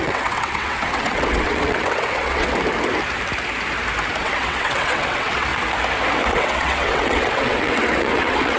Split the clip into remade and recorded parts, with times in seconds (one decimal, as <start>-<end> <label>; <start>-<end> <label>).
0.0-2.5 remade; 2.5-4.2 recorded; 4.2-5.5 remade; 5.5-6.3 recorded; 6.3-8.6 remade